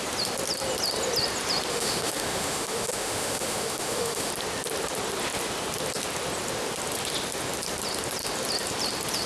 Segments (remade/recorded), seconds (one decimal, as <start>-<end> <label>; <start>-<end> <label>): 0.0-1.7 recorded; 1.7-4.3 remade; 4.3-9.3 recorded